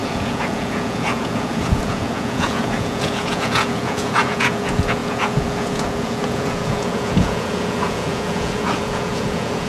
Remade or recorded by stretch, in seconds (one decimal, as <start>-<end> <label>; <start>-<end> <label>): 0.0-9.7 remade